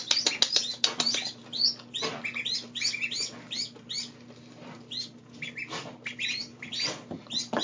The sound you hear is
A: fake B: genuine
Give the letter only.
B